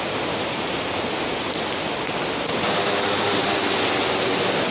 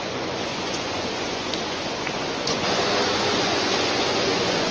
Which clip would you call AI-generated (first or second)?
second